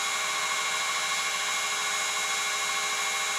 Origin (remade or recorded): recorded